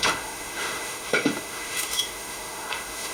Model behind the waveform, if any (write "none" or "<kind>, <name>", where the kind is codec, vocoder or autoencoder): autoencoder, DAC-VAE